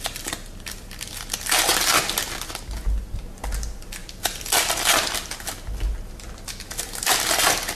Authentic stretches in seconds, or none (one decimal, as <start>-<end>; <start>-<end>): 0.0-1.7; 2.6-7.7